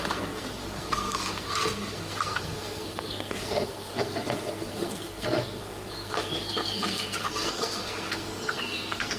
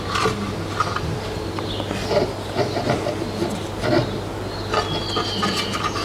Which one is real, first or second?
second